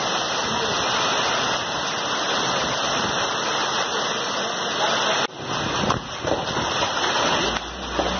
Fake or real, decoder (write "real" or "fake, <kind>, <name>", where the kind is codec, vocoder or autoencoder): real